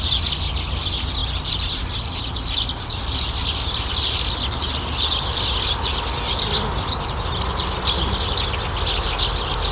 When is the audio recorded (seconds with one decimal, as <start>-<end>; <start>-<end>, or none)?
0.0-9.7